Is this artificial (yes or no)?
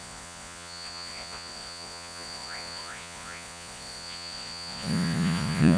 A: yes